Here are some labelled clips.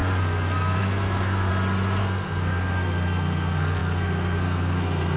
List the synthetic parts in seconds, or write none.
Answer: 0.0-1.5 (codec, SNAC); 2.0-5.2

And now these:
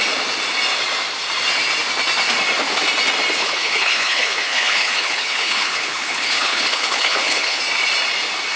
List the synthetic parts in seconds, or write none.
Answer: 3.4-7.6 (codec, HILCodec)

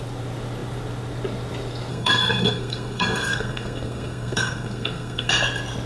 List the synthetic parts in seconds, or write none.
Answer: 1.9-5.3 (codec, SNAC)

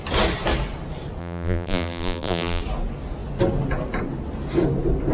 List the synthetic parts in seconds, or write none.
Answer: 1.2-2.6 (vocoder, BigVGAN v2)

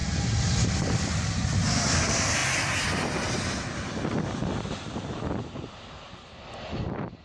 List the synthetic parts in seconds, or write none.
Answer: none

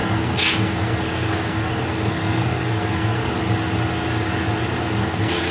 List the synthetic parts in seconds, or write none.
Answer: 0.0-3.3 (codec, SNAC); 5.0-5.5